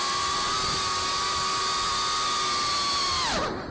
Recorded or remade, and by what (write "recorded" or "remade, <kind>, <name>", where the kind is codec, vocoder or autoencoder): recorded